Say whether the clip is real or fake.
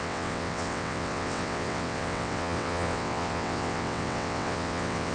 fake